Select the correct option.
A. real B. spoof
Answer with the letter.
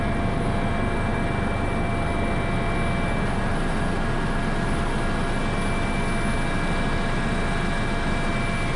A